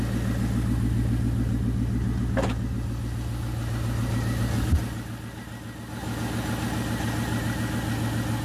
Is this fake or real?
real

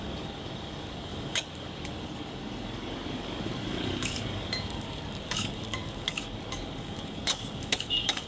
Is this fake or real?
fake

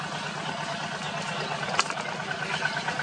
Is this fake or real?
real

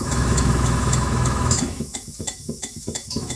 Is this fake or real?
fake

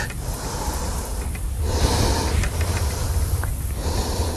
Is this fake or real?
real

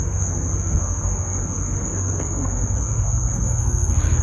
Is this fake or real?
fake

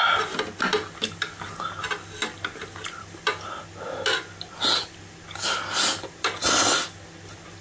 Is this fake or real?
real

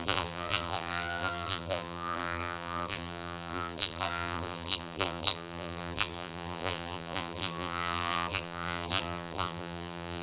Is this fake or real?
fake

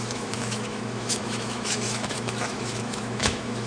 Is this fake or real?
fake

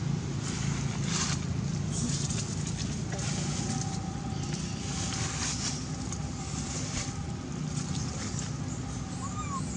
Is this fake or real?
real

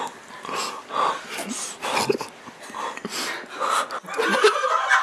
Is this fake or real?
real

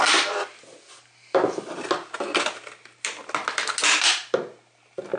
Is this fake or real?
real